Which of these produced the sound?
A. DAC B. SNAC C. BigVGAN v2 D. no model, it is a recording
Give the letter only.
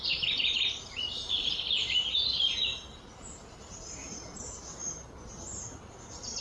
D